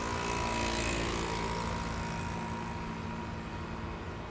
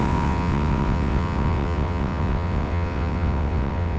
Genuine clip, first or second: first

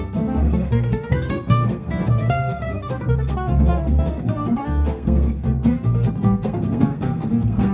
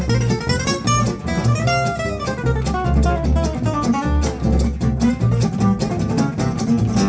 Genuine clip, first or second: second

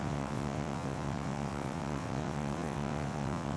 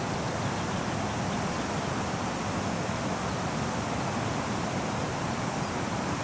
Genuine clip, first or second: second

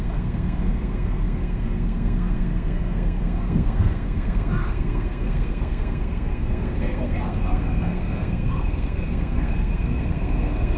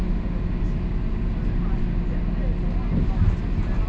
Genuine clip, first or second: second